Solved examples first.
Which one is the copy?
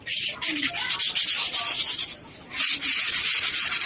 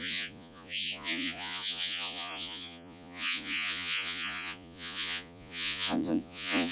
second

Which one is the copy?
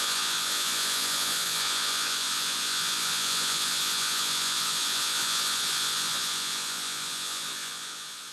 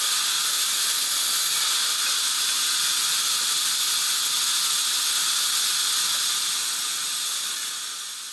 first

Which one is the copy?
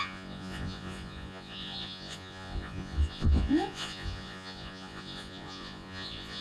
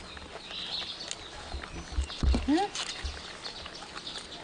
first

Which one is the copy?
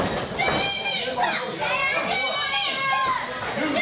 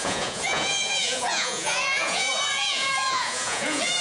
second